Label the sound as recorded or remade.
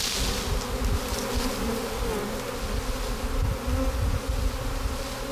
recorded